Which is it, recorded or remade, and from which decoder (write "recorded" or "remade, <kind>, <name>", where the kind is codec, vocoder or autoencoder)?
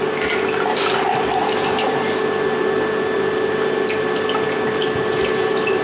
recorded